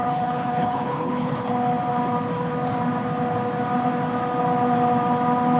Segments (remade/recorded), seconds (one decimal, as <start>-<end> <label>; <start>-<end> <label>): 0.0-1.5 remade; 1.5-5.6 recorded